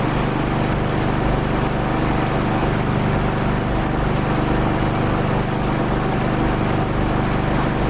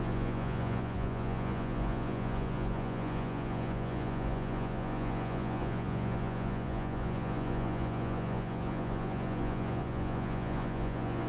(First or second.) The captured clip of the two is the first